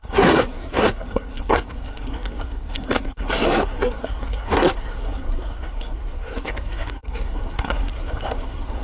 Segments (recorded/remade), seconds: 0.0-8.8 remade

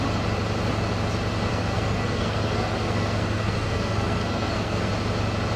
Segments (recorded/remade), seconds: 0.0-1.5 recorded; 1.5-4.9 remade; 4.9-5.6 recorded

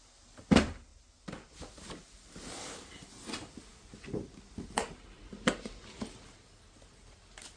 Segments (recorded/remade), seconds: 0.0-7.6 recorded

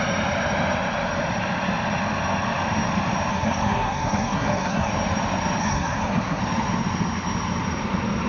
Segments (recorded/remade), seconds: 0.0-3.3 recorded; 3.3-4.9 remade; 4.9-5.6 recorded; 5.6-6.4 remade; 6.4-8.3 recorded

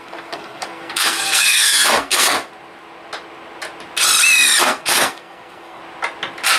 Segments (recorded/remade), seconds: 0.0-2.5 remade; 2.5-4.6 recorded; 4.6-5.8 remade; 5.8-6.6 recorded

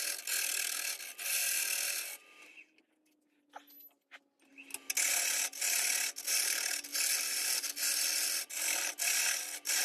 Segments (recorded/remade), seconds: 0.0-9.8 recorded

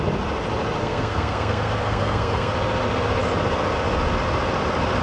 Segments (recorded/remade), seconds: 0.0-0.8 recorded; 0.8-2.5 remade; 2.5-5.0 recorded

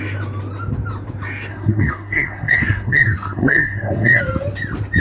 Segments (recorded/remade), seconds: 0.0-1.5 recorded; 1.5-4.2 remade; 4.2-5.0 recorded